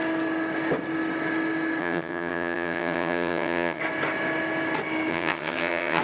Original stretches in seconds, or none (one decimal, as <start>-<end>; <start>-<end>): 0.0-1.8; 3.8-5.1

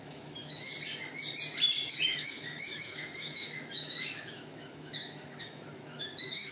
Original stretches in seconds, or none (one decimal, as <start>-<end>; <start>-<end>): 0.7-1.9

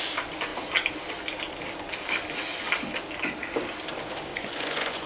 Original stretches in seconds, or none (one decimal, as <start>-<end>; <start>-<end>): 0.0-4.3